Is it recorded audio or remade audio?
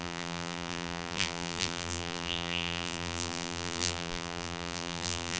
remade